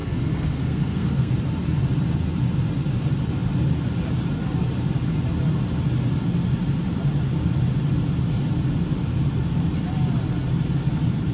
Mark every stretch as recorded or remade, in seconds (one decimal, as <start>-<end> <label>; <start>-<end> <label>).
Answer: 0.0-1.3 remade; 1.3-11.3 recorded